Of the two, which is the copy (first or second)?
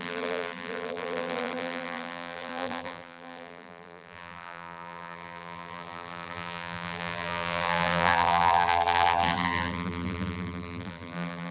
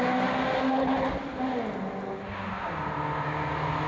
first